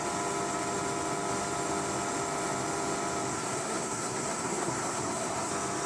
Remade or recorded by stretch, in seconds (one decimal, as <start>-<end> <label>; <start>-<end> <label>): 0.0-3.3 recorded; 3.3-5.5 remade; 5.5-5.9 recorded